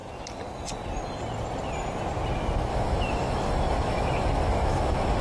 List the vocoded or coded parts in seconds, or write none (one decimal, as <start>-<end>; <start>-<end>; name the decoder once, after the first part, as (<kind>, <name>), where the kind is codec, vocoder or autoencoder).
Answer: 2.7-5.2 (autoencoder, DAC-VAE)